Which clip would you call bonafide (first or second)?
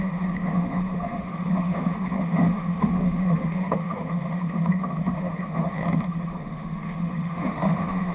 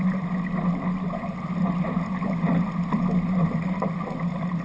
second